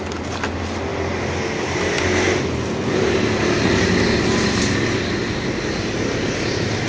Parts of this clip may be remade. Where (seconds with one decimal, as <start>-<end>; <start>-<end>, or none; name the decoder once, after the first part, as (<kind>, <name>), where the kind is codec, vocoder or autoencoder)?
none